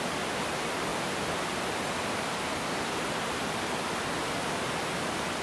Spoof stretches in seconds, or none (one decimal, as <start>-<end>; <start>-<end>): none